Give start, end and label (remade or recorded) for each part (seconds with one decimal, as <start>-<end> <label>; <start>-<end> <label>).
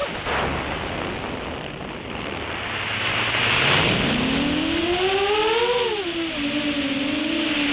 0.0-7.7 recorded